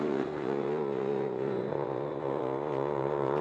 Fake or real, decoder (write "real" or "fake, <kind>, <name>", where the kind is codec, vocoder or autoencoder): fake, vocoder, Vocos